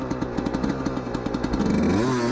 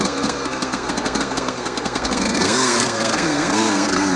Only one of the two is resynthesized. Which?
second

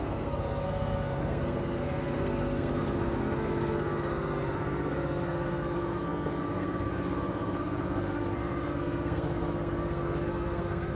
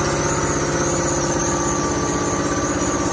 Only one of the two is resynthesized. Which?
first